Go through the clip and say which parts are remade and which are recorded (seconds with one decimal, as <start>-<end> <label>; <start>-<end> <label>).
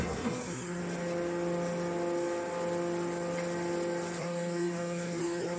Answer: 0.0-0.8 remade; 0.8-4.2 recorded; 4.2-5.6 remade